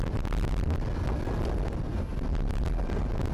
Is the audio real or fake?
real